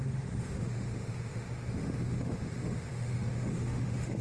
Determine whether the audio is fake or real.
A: fake